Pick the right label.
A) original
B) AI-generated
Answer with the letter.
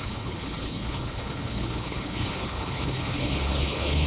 B